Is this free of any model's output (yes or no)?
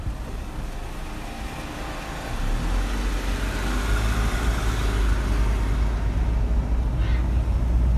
yes